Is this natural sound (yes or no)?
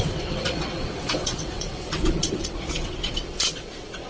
no